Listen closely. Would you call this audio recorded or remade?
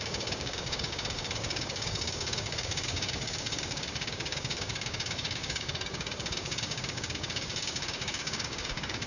remade